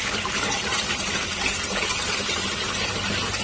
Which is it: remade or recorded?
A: recorded